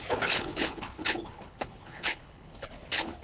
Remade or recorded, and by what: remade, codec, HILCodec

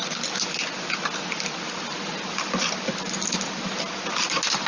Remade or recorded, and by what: recorded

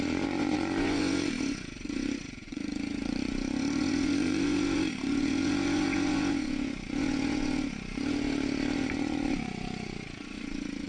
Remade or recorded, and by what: remade, vocoder, Vocos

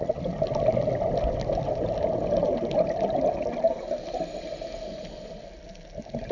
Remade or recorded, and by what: recorded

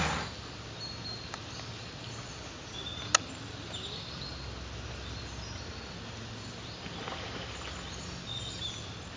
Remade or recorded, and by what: recorded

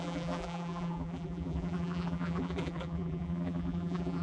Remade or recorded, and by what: remade, vocoder, BigVGAN v2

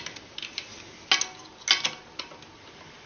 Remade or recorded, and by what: recorded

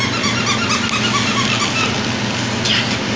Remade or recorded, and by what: recorded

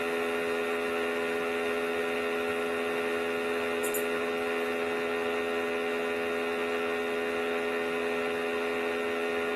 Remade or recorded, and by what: recorded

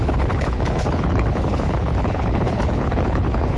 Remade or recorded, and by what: remade, codec, HILCodec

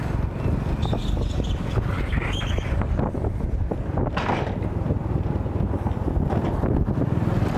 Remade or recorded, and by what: recorded